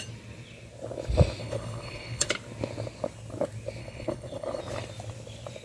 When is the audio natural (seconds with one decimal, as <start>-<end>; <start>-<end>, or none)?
0.0-1.4; 2.3-3.8; 4.6-5.6